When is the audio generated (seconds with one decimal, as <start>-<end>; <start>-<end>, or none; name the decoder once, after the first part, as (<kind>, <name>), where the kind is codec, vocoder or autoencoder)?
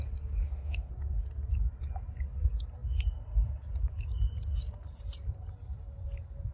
0.4-0.9 (autoencoder, DAC-VAE)